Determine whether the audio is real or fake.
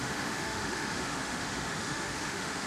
fake